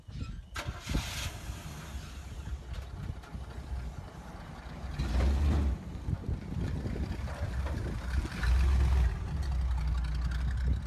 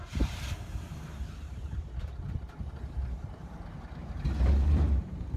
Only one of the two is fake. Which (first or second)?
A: second